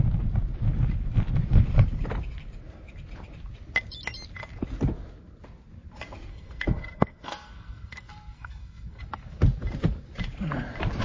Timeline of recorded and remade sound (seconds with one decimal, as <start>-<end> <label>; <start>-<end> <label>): 0.0-6.3 recorded; 6.3-9.0 remade; 9.0-11.0 recorded